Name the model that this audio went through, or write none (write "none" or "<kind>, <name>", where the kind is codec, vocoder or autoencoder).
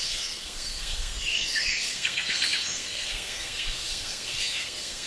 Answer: codec, SNAC